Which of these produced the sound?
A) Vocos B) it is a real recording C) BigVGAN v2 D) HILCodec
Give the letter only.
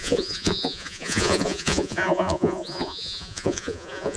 A